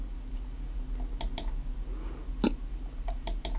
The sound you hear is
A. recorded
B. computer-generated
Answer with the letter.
A